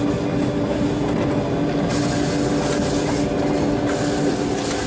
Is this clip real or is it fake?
real